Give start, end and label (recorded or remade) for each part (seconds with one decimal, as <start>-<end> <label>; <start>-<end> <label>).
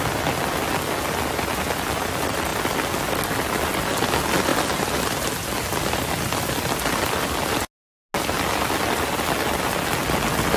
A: 0.0-4.5 recorded; 4.5-5.3 remade; 5.3-10.6 recorded